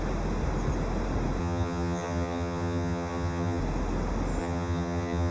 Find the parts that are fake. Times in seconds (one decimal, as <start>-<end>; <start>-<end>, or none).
1.4-3.6; 4.4-5.3